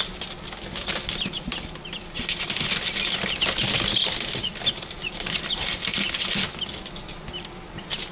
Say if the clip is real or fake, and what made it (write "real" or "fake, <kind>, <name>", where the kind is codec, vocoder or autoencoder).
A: real